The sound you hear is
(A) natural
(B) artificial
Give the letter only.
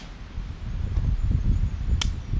A